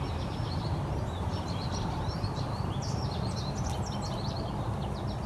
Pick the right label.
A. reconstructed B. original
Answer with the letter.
B